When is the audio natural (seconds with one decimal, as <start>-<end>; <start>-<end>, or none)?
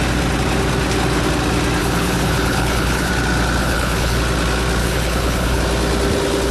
0.0-1.8; 3.1-3.6; 4.2-4.8; 5.6-6.5